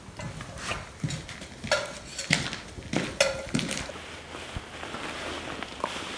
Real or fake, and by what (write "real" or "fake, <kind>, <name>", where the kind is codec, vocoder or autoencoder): real